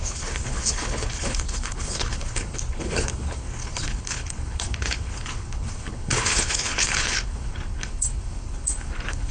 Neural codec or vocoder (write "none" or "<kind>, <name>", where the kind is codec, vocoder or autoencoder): codec, HILCodec